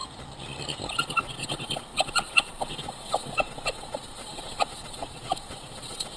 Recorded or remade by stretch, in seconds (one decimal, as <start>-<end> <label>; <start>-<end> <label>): 0.0-1.0 recorded; 1.0-6.2 remade